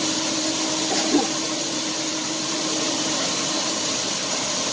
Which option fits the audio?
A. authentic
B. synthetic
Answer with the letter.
B